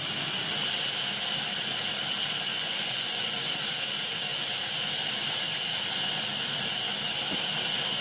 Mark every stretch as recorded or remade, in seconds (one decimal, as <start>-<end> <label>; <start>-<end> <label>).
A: 0.0-2.5 recorded; 2.5-3.3 remade; 3.3-8.0 recorded